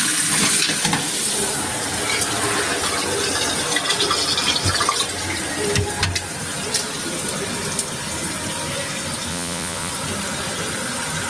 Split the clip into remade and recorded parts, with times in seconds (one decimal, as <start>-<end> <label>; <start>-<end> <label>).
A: 0.0-9.3 recorded; 9.3-9.9 remade; 9.9-11.3 recorded